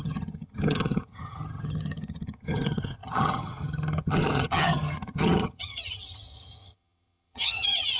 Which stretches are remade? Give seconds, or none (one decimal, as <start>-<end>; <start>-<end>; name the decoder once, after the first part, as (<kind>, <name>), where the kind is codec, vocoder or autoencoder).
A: 0.0-8.0 (vocoder, HiFi-GAN)